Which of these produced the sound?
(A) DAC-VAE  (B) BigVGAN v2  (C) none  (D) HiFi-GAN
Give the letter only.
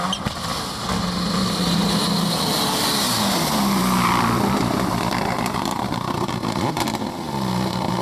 C